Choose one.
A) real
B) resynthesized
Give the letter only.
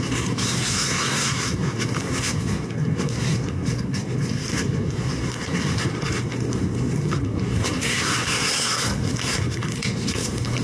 B